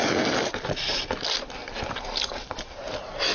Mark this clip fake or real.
real